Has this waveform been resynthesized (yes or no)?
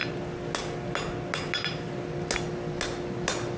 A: no